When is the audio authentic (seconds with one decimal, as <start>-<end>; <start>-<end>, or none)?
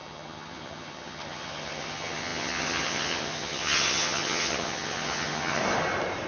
5.6-6.3